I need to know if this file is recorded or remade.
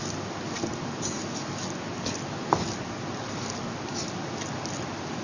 recorded